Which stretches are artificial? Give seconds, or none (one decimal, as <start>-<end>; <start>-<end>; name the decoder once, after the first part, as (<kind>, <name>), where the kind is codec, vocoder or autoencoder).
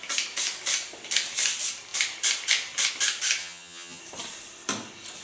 3.4-4.0 (vocoder, HiFi-GAN)